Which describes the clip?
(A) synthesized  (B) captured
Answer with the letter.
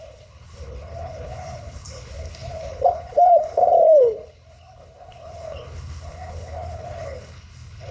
A